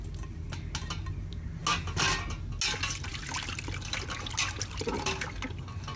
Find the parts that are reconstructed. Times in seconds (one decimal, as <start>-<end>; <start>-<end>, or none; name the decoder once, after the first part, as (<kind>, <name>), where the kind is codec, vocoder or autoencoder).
none